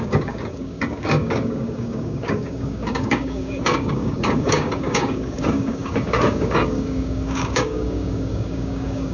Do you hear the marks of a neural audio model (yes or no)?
yes